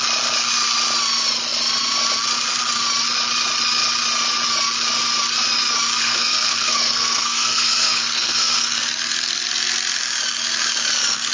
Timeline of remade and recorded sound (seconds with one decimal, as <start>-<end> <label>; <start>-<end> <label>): 0.0-6.0 recorded; 6.0-8.7 remade; 8.7-11.3 recorded